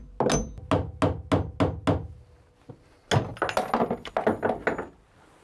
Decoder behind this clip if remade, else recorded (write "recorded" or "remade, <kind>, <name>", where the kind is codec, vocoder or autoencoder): recorded